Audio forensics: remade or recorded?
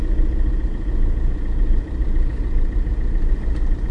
recorded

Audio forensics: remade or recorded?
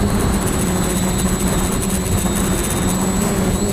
recorded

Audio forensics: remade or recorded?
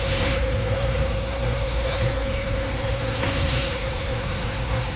remade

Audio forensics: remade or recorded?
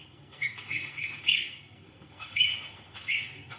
remade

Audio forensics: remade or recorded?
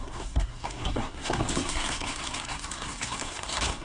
remade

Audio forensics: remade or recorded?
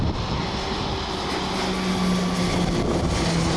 recorded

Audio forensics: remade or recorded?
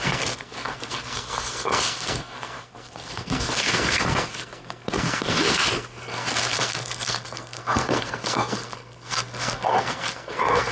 remade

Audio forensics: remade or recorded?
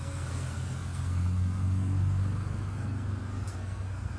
remade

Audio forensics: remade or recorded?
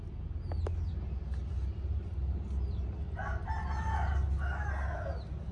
recorded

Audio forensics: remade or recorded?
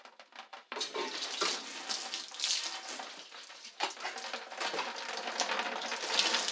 recorded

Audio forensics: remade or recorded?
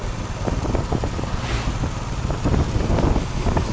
recorded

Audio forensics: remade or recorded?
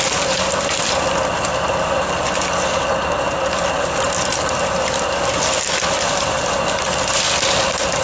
recorded